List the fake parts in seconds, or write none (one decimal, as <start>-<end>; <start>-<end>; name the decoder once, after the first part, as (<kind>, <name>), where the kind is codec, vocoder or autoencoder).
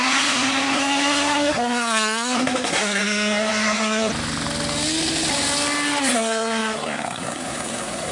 0.0-4.1 (codec, SNAC); 6.0-8.1